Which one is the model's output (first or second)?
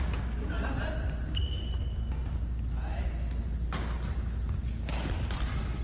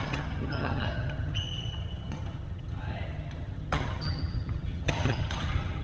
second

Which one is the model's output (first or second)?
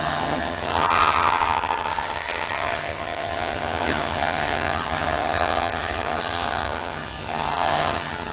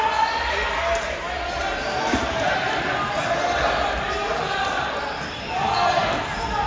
first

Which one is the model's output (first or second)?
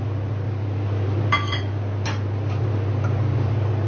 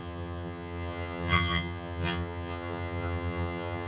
second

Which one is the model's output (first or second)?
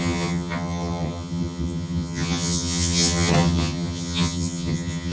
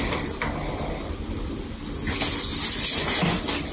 first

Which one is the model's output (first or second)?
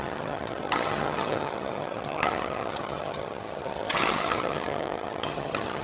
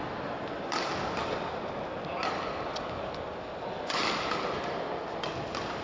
first